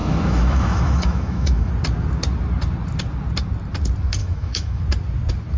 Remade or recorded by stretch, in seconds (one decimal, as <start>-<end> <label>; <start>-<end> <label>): 0.0-1.7 remade; 1.7-4.2 recorded; 4.2-4.8 remade; 4.8-5.6 recorded